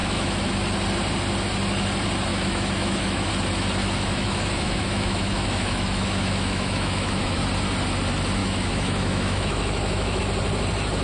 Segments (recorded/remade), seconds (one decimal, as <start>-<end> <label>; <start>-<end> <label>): 0.0-0.5 remade; 0.5-2.3 recorded; 2.3-3.3 remade; 3.3-3.8 recorded; 3.8-7.4 remade; 7.4-8.4 recorded; 8.4-10.2 remade; 10.2-11.0 recorded